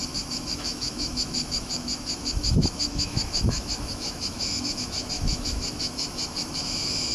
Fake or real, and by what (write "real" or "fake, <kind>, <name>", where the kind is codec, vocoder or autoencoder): fake, autoencoder, DAC-VAE